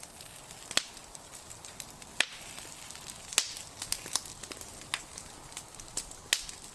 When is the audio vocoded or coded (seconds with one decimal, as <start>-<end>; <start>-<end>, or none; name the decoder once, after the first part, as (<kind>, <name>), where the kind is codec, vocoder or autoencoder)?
none